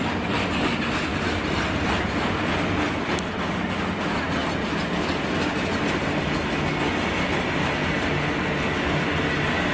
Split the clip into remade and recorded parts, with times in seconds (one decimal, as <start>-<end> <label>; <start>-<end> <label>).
0.0-9.7 recorded